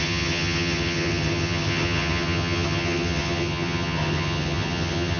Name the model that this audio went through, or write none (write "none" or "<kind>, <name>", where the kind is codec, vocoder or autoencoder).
vocoder, HiFi-GAN